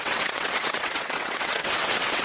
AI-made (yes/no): yes